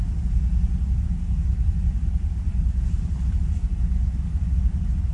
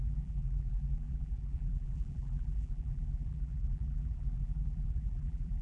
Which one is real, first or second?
first